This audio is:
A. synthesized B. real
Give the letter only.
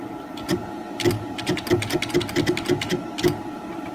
B